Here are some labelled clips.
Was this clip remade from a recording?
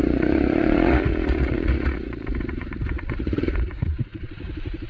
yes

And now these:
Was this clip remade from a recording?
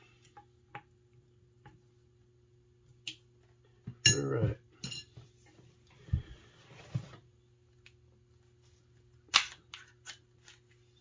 no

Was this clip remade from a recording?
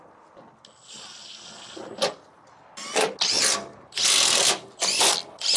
no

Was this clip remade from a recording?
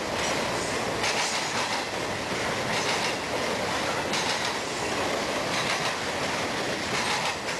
no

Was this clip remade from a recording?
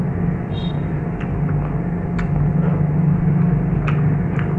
no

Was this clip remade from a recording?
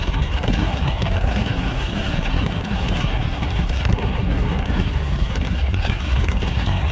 yes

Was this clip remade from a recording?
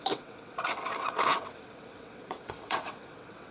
yes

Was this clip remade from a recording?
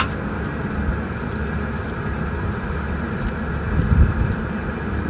no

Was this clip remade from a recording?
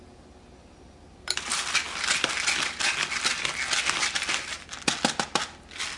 no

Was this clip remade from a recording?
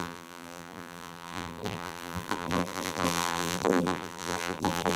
yes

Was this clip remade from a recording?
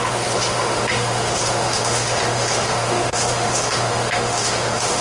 yes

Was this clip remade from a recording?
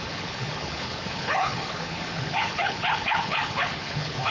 yes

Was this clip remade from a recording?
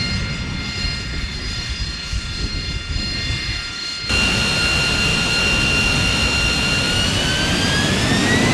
no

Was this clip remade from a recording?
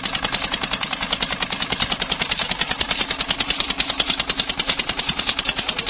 no